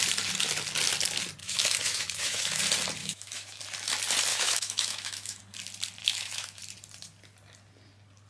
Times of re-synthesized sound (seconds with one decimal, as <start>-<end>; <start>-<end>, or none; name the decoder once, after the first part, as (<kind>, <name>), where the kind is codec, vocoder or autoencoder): 1.4-2.6 (autoencoder, DAC-VAE); 3.0-3.6; 4.3-5.4; 6.0-6.6